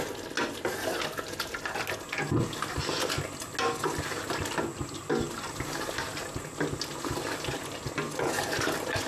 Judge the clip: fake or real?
real